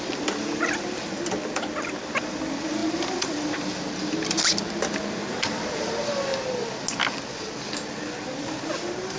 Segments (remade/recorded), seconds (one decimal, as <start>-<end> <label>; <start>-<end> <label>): 0.0-9.2 recorded